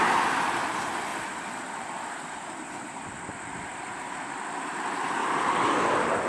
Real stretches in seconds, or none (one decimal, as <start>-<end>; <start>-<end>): 5.2-6.3